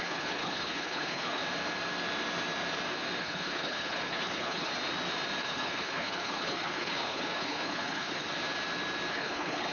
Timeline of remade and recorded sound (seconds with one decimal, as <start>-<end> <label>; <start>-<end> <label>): 0.0-1.4 remade; 1.4-3.2 recorded; 3.2-4.7 remade; 4.7-5.4 recorded; 5.4-8.3 remade; 8.3-9.1 recorded; 9.1-9.7 remade